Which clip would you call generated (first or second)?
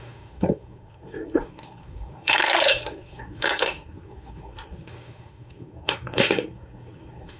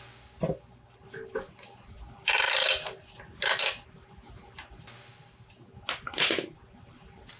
first